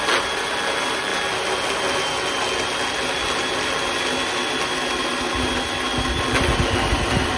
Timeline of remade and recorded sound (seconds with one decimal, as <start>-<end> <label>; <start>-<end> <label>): 0.0-7.4 recorded